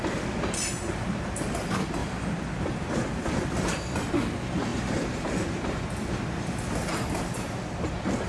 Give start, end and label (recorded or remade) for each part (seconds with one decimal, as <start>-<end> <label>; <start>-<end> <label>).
0.0-2.0 recorded; 2.0-4.1 remade; 4.1-4.7 recorded; 4.7-7.9 remade; 7.9-8.3 recorded